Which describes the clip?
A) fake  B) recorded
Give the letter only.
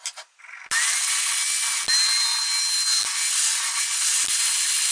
B